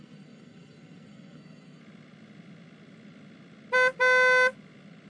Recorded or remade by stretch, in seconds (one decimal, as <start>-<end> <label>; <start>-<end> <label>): 0.0-1.8 remade; 1.8-5.1 recorded